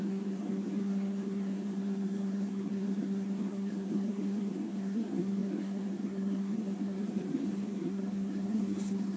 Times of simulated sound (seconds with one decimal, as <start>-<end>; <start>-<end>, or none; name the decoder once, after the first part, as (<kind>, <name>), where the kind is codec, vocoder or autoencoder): 0.0-9.2 (codec, SNAC)